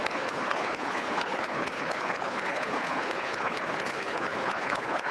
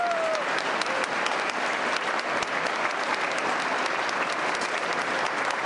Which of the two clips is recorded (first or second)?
second